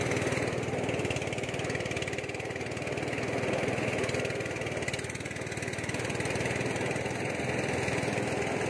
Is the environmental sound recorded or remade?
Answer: recorded